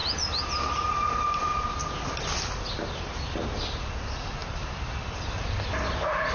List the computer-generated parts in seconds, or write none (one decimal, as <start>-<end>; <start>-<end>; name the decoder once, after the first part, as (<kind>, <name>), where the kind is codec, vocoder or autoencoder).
none